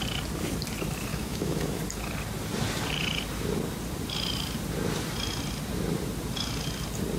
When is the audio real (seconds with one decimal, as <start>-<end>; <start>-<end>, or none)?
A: 0.0-1.1; 1.8-7.2